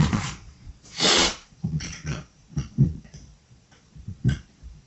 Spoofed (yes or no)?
yes